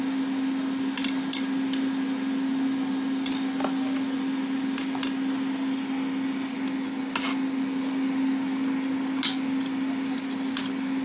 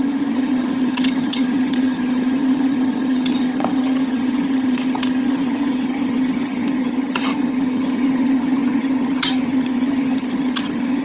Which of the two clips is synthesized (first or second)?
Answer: second